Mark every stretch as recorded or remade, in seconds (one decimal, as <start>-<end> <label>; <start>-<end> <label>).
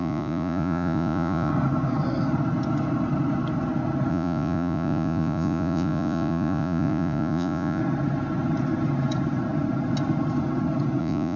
0.0-1.5 remade; 1.5-4.1 recorded; 4.1-7.8 remade; 7.8-11.0 recorded; 11.0-11.4 remade